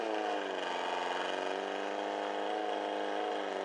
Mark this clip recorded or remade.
recorded